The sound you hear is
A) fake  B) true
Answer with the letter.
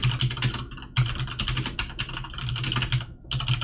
B